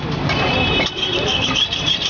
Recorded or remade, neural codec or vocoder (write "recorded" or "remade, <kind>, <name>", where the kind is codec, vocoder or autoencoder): remade, vocoder, BigVGAN v2